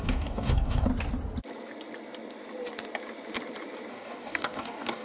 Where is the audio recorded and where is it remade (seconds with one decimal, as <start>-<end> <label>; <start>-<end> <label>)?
0.0-0.9 remade; 0.9-3.9 recorded; 3.9-5.0 remade